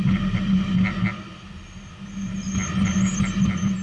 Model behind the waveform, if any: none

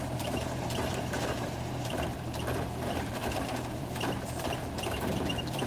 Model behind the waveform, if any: vocoder, BigVGAN v2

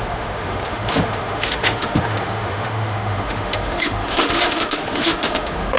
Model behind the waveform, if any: autoencoder, DAC-VAE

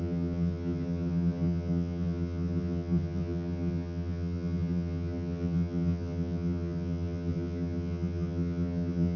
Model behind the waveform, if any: vocoder, HiFi-GAN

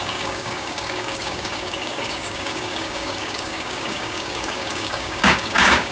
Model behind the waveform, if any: codec, DAC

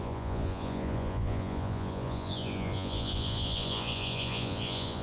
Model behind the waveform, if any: vocoder, Vocos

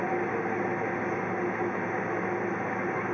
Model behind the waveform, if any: none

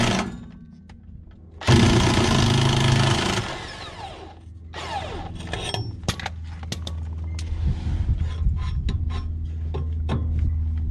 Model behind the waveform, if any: none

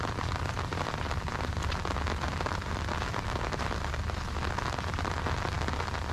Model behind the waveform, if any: none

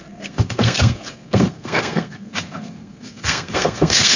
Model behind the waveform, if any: codec, SNAC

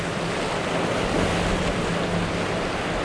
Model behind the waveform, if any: none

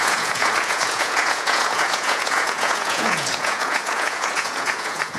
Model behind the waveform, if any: vocoder, Vocos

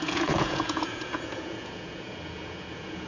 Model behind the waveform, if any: vocoder, Vocos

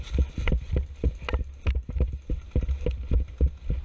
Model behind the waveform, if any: none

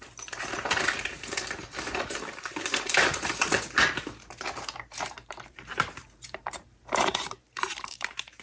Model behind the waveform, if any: vocoder, BigVGAN v2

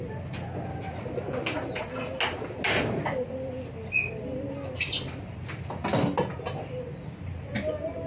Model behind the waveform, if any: none